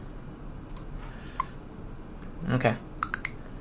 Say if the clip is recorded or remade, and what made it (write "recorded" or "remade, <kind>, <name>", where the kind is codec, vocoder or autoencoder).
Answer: recorded